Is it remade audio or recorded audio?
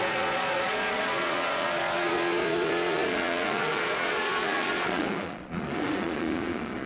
remade